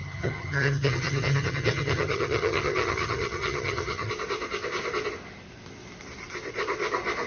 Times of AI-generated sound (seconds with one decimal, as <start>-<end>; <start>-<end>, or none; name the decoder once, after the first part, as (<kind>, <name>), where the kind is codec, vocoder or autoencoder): 0.0-4.1 (vocoder, HiFi-GAN)